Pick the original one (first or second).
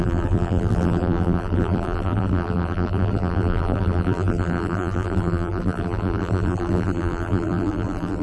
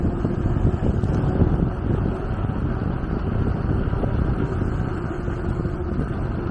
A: second